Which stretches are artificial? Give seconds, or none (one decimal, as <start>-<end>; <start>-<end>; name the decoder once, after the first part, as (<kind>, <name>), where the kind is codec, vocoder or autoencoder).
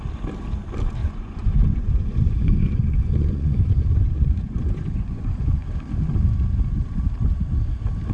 1.0-5.9 (vocoder, Vocos)